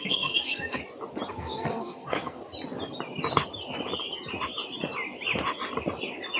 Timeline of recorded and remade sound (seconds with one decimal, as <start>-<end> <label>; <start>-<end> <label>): 0.0-0.8 remade; 0.8-1.3 recorded; 1.3-2.4 remade; 2.4-6.4 recorded